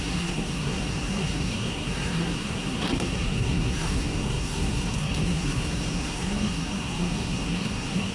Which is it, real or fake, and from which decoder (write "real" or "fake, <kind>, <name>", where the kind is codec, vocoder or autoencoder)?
fake, codec, SNAC